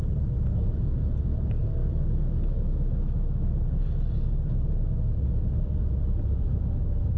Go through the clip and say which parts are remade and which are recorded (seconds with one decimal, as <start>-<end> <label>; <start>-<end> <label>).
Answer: 0.0-1.8 recorded; 1.8-3.5 remade; 3.5-7.2 recorded